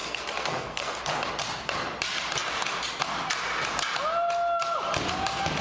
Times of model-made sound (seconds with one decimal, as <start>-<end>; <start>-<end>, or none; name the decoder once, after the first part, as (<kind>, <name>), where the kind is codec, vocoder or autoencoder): 0.0-1.0 (codec, SNAC)